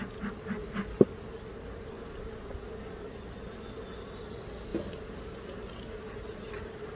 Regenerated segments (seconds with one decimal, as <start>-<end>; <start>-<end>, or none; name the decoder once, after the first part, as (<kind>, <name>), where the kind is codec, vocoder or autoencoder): none